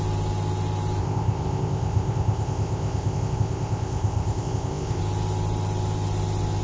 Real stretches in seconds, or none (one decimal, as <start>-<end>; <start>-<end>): 0.0-1.0; 5.0-6.6